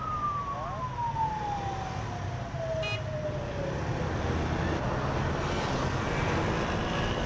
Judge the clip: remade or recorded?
recorded